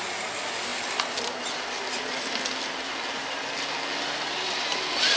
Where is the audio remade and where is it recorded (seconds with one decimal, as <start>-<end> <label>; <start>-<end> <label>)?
0.0-5.2 recorded